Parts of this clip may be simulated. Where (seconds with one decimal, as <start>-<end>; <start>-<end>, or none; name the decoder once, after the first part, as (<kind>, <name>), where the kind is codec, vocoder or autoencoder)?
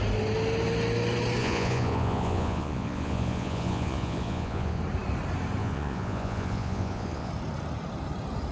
1.4-4.8 (vocoder, Vocos); 5.6-7.3